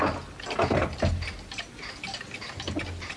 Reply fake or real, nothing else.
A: real